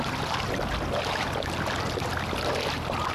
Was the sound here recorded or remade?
recorded